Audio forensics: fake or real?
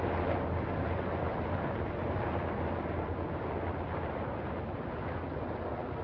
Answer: real